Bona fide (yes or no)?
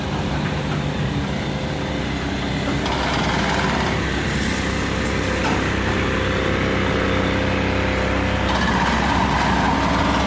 yes